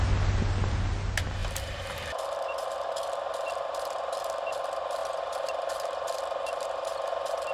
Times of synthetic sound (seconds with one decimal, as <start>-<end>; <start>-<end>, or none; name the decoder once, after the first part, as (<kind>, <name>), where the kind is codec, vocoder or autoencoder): 1.4-2.9 (vocoder, BigVGAN v2)